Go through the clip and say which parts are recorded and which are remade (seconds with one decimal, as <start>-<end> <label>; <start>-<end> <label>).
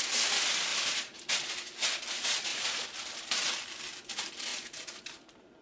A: 0.0-0.7 recorded; 0.7-1.3 remade; 1.3-4.5 recorded; 4.5-5.6 remade